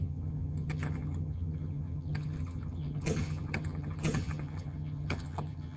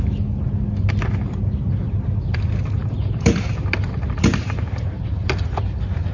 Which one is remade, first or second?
first